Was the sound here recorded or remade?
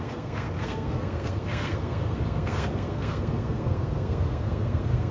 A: remade